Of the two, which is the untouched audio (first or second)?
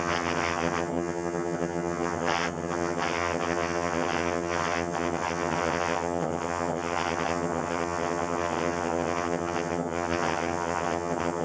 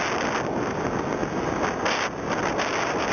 second